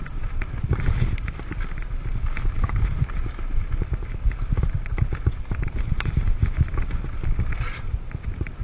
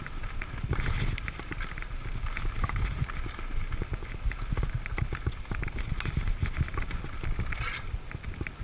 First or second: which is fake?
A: first